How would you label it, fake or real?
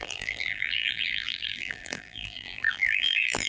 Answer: fake